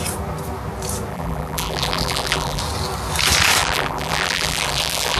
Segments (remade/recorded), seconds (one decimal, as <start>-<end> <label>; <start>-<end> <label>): 0.0-1.1 recorded; 1.1-2.6 remade; 2.6-3.6 recorded; 3.6-5.2 remade